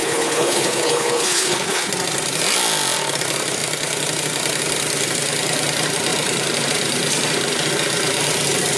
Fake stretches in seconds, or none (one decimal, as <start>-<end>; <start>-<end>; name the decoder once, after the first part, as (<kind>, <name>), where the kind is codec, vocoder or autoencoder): 0.0-1.9 (codec, HILCodec)